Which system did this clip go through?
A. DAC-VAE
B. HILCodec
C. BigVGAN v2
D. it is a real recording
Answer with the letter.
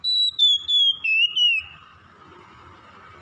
C